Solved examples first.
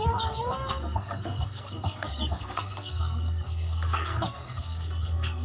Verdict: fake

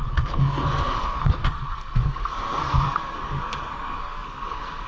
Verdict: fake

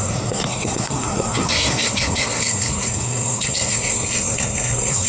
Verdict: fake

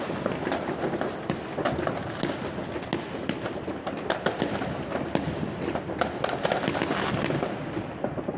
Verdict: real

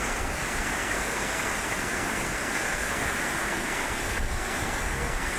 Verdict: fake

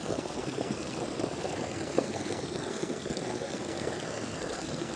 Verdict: fake